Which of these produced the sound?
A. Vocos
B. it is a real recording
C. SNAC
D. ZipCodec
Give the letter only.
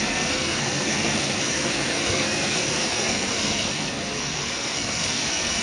C